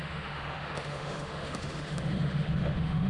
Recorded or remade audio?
remade